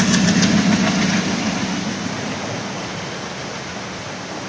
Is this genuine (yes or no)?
yes